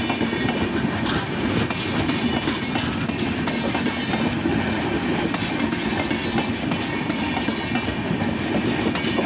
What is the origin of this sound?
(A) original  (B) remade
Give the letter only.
A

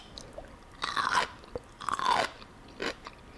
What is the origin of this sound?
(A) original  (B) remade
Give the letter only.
A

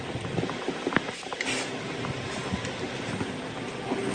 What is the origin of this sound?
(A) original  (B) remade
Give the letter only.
A